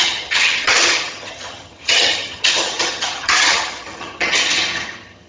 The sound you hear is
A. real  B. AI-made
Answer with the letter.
B